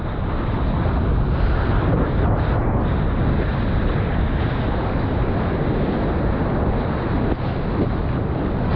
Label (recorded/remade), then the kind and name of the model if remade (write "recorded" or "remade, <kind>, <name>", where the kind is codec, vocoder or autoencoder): recorded